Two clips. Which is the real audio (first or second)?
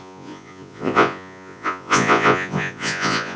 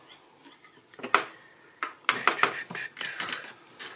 second